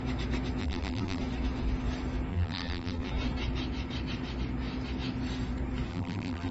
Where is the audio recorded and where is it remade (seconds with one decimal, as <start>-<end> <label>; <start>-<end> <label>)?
0.0-0.6 recorded; 0.6-1.2 remade; 1.2-2.3 recorded; 2.3-3.1 remade; 3.1-5.9 recorded; 5.9-6.5 remade